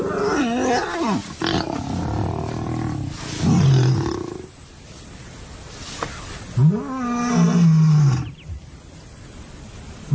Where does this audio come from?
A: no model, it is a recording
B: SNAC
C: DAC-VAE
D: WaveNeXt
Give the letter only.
A